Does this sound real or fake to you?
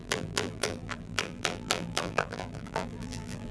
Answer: fake